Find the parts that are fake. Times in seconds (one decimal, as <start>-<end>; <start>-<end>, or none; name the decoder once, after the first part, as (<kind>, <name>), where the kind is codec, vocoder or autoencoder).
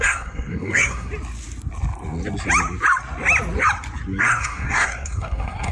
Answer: 0.0-1.1 (codec, SNAC); 4.2-5.7